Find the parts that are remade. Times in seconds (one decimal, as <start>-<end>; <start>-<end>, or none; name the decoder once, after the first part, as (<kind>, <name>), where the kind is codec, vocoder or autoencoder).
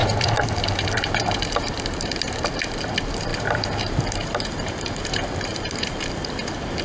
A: 0.0-6.8 (vocoder, BigVGAN v2)